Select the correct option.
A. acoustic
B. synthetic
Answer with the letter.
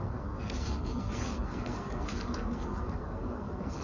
B